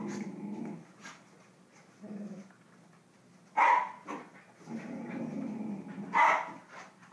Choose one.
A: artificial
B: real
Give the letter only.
B